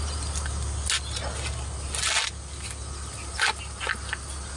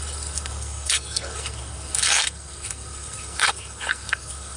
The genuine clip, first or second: first